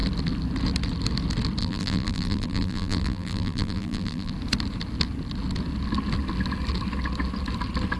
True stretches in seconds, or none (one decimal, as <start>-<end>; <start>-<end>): 0.0-1.6; 4.3-8.0